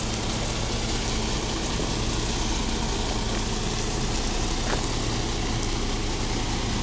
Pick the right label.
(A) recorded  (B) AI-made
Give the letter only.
A